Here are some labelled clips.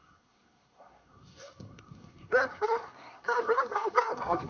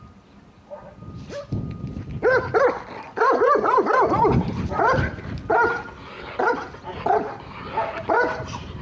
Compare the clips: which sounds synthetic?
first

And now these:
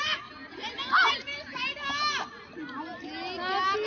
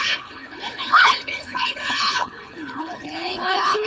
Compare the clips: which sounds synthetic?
second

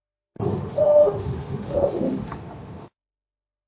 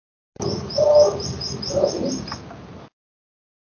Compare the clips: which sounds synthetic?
first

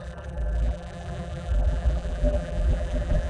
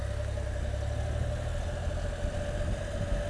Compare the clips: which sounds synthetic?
first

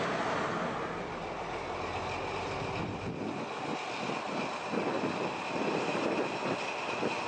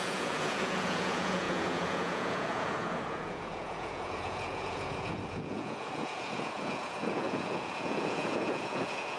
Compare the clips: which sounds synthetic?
second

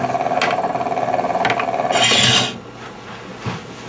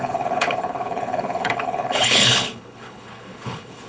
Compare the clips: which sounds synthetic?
second